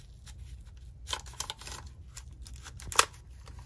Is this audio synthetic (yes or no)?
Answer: no